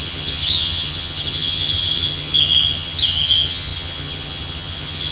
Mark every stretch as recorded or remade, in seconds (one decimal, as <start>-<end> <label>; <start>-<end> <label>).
0.0-5.1 remade